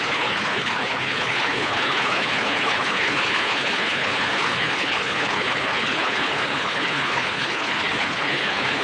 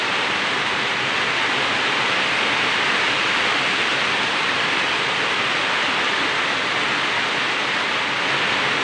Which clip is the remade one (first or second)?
first